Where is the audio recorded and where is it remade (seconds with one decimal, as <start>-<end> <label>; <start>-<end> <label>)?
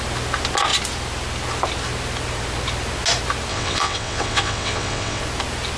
0.0-3.5 recorded; 3.5-5.2 remade; 5.2-5.8 recorded